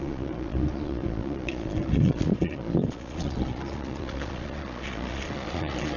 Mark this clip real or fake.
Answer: fake